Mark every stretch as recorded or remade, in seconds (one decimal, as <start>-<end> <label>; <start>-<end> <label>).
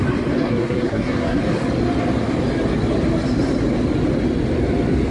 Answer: 0.0-0.4 recorded; 0.4-1.4 remade; 1.4-5.1 recorded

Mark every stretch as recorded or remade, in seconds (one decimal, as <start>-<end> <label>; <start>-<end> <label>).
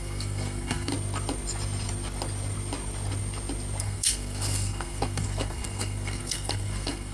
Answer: 0.0-0.9 remade; 0.9-3.8 recorded; 3.8-7.1 remade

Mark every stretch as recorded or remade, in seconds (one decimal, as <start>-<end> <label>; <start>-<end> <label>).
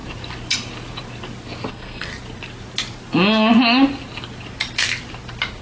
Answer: 0.0-1.7 recorded; 1.7-2.1 remade; 2.1-5.6 recorded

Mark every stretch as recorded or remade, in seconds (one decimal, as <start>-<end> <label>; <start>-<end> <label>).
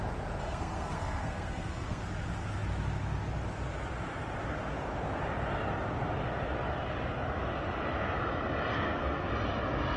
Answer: 0.0-0.4 recorded; 0.4-2.0 remade; 2.0-8.7 recorded; 8.7-9.3 remade; 9.3-10.0 recorded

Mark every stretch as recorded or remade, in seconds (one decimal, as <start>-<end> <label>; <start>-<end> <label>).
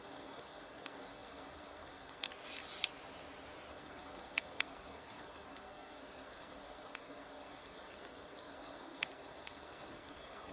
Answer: 0.0-2.3 remade; 2.3-3.7 recorded; 3.7-10.5 remade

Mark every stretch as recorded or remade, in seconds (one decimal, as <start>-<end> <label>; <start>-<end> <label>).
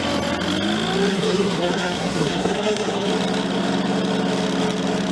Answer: 0.0-1.1 recorded; 1.1-3.1 remade; 3.1-5.1 recorded